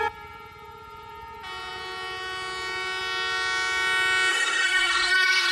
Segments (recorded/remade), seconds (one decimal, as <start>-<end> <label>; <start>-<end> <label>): 0.0-4.3 recorded; 4.3-5.5 remade